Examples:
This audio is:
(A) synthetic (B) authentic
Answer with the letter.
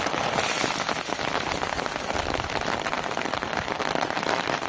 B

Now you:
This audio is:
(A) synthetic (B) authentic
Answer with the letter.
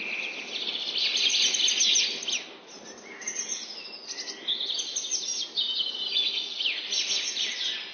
B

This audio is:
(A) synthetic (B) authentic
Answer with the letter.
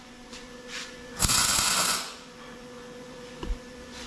A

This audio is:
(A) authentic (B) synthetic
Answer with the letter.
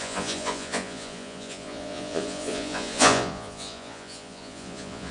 B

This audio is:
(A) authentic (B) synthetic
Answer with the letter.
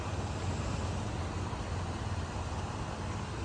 A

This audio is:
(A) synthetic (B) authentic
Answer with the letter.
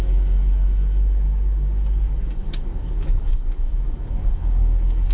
A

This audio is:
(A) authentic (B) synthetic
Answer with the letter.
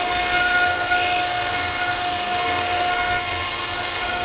B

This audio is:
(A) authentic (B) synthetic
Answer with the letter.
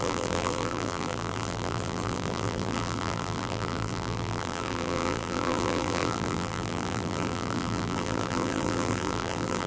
B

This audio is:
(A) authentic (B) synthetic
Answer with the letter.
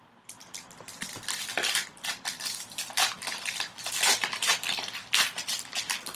B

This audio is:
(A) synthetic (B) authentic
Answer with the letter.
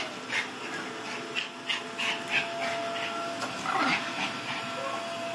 B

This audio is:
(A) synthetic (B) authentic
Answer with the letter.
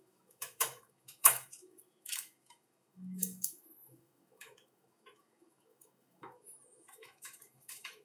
A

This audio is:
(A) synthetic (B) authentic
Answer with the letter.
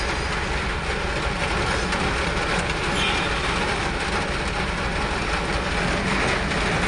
B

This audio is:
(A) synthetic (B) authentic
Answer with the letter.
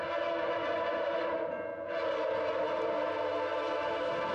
B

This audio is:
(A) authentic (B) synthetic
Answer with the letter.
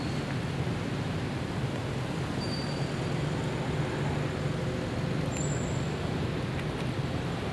A